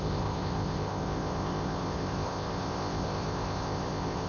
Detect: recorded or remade remade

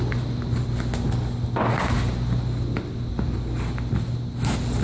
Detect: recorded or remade recorded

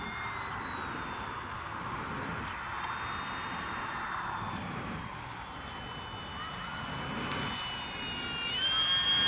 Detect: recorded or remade recorded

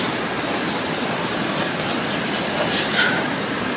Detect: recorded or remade recorded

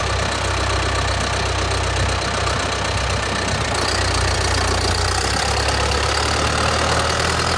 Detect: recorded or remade recorded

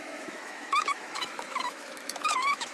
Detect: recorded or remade remade